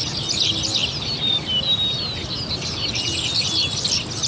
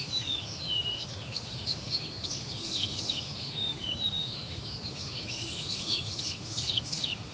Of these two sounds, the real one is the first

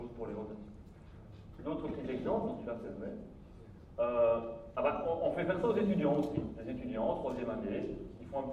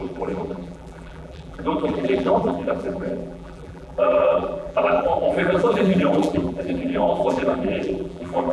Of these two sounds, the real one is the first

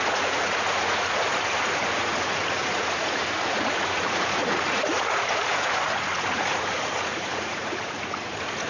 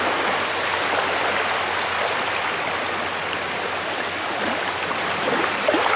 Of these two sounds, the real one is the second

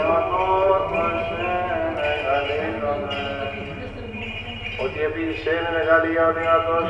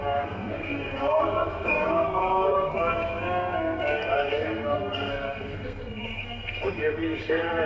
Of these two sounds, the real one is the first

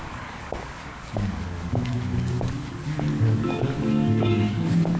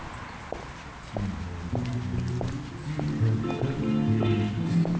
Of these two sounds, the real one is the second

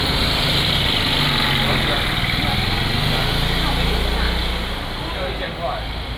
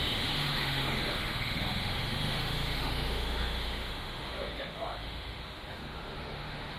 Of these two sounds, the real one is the first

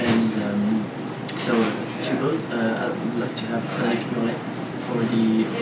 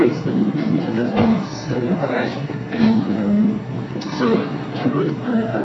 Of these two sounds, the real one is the first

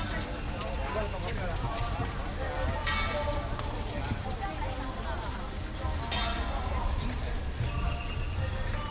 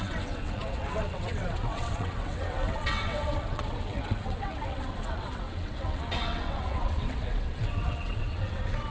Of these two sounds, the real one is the first